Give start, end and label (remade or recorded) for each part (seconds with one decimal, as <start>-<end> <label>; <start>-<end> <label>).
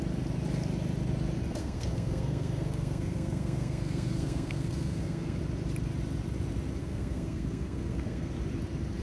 0.0-1.6 recorded; 1.6-5.4 remade; 5.4-6.8 recorded; 6.8-8.3 remade; 8.3-9.0 recorded